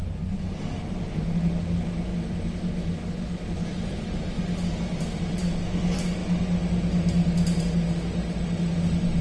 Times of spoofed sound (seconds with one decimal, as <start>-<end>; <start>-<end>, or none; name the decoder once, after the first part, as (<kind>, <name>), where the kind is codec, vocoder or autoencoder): none